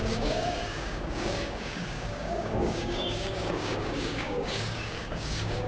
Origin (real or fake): fake